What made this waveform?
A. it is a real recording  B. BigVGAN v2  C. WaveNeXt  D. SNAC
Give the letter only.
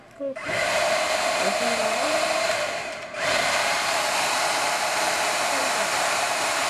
B